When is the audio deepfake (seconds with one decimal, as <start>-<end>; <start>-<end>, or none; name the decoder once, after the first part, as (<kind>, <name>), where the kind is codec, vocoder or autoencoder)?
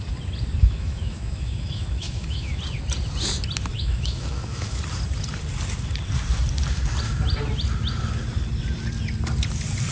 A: 0.6-2.6 (autoencoder, DAC-VAE); 3.7-4.8